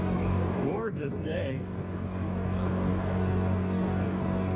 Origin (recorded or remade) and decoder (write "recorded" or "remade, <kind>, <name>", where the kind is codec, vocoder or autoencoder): remade, codec, DAC